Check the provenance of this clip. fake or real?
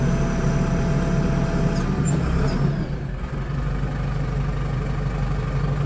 real